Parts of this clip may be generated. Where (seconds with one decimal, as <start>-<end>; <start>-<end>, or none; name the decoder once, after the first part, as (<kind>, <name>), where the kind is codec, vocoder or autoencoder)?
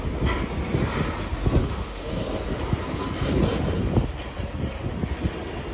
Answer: 1.6-2.1 (autoencoder, DAC-VAE)